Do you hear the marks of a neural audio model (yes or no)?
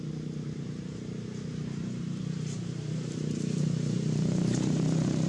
yes